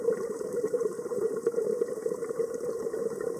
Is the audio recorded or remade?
remade